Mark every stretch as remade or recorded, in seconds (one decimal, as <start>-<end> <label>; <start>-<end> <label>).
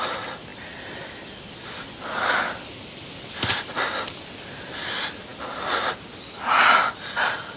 0.0-7.6 recorded